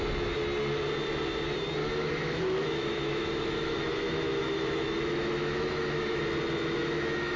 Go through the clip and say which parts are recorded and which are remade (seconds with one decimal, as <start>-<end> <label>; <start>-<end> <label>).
0.0-1.8 recorded; 1.8-6.2 remade; 6.2-6.8 recorded; 6.8-7.4 remade